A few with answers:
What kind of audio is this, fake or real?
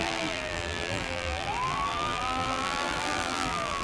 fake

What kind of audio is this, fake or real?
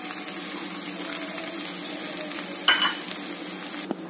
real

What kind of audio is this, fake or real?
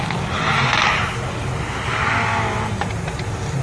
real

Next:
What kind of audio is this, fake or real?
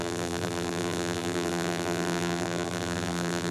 fake